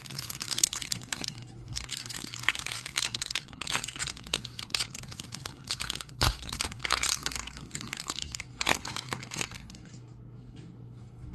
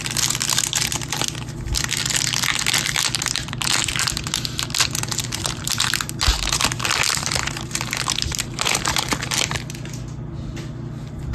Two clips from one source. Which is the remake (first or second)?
first